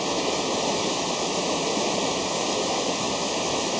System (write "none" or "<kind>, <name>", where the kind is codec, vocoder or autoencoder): autoencoder, DAC-VAE